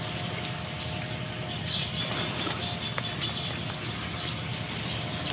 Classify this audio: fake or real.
real